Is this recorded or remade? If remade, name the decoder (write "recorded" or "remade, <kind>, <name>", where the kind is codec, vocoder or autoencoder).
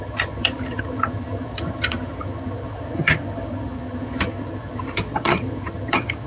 remade, vocoder, HiFi-GAN